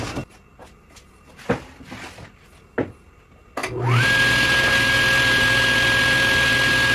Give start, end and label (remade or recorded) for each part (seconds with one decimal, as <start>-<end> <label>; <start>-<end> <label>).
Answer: 0.0-6.9 recorded